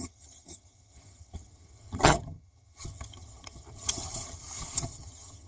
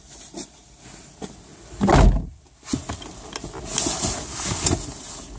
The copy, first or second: first